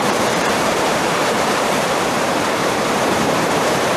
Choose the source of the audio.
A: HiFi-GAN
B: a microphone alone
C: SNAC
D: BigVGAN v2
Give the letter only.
D